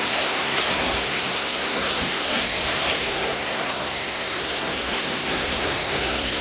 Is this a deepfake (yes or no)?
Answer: yes